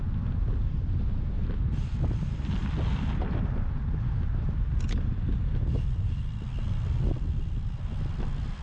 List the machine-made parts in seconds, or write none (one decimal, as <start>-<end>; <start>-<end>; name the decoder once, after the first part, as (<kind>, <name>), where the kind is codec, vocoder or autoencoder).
none